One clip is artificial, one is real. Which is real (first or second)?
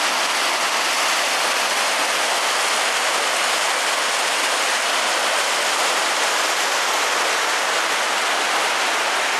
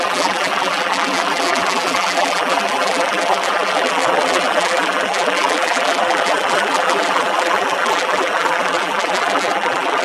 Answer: first